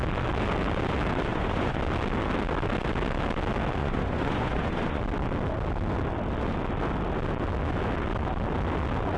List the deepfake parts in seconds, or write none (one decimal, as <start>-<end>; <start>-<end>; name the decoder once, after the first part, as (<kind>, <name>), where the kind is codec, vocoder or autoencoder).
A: 1.3-1.8 (vocoder, Vocos); 3.8-5.0